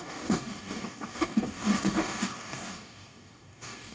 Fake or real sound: fake